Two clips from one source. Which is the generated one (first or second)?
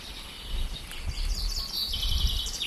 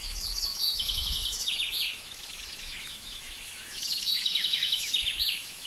second